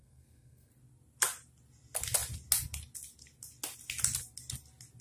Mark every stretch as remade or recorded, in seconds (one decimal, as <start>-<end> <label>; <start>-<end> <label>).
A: 0.0-0.7 remade; 0.7-5.0 recorded